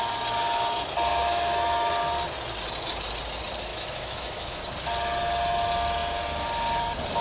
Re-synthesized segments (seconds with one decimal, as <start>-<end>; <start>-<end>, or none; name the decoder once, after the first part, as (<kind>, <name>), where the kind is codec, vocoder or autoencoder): 1.1-1.9 (autoencoder, DAC-VAE); 3.7-4.6